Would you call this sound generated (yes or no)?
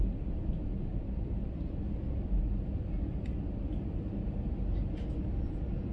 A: no